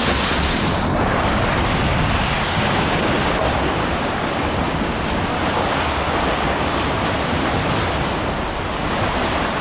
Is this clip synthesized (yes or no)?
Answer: no